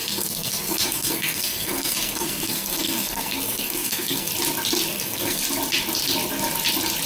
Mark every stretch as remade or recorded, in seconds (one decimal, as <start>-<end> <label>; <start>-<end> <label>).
0.0-4.3 remade; 4.3-4.9 recorded; 4.9-5.4 remade; 5.4-7.1 recorded